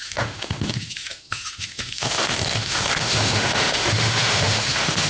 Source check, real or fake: fake